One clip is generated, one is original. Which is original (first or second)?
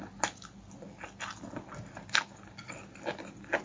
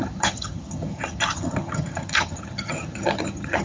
first